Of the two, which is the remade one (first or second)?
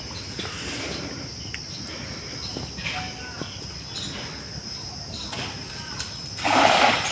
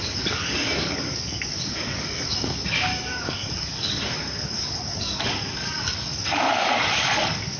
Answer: second